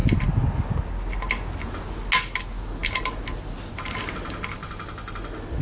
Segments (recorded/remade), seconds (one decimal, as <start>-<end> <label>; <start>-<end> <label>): 0.0-5.6 recorded